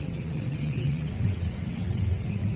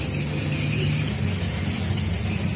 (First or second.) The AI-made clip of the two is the first